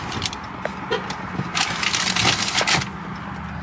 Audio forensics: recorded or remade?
recorded